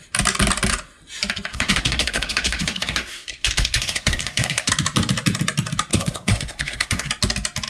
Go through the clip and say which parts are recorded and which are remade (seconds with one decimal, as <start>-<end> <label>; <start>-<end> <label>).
0.0-1.5 recorded; 1.5-4.7 remade; 4.7-5.9 recorded; 5.9-7.1 remade; 7.1-7.7 recorded